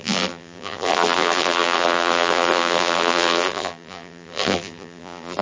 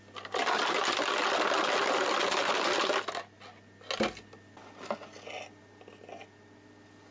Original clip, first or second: second